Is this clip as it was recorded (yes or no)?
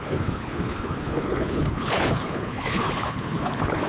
no